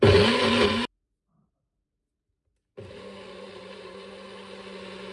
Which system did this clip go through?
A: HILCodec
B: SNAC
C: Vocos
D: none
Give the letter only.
D